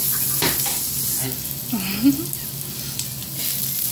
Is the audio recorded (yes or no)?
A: yes